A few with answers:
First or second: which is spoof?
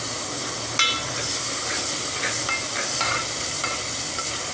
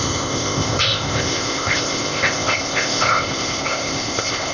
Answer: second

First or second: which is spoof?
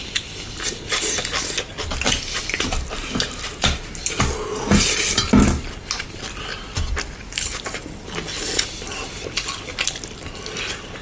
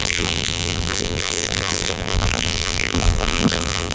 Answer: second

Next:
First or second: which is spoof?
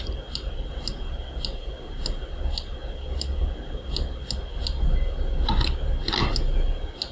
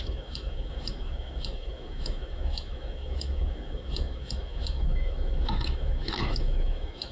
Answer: second